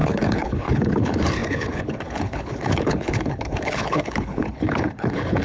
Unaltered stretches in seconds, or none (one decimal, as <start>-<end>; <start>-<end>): none